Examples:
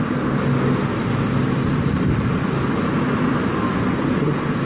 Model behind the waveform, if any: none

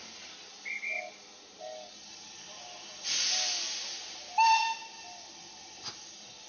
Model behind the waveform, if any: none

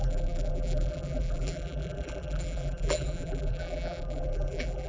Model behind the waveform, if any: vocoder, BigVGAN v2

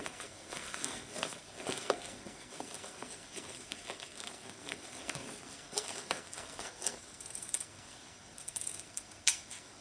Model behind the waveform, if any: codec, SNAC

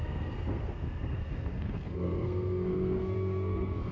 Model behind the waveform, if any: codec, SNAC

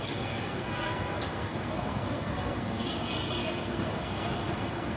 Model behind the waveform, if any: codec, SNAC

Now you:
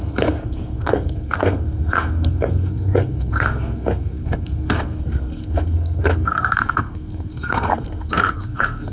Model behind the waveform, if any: codec, SNAC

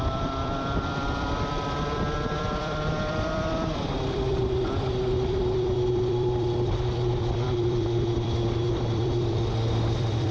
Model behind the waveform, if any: vocoder, BigVGAN v2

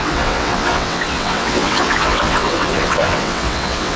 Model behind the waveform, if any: vocoder, WaveNeXt